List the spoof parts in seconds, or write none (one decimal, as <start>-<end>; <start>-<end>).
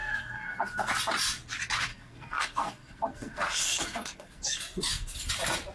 0.0-0.9; 1.9-5.3